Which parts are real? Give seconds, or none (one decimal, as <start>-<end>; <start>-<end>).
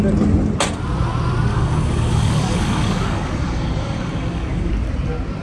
0.0-1.5; 4.7-5.4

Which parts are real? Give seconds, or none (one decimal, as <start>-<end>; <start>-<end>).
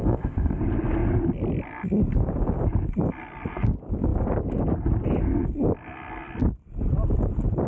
0.6-7.7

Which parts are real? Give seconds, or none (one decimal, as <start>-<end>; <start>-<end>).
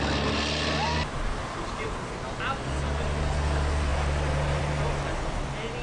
0.0-5.8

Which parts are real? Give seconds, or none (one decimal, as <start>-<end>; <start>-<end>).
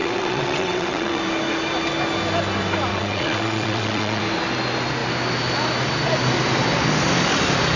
1.2-2.9; 4.2-7.8